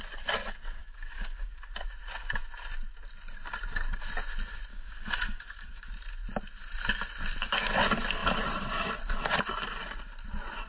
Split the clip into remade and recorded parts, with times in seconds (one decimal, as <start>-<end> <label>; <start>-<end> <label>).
0.0-0.8 recorded; 0.8-1.6 remade; 1.6-4.7 recorded; 4.7-5.9 remade; 5.9-10.7 recorded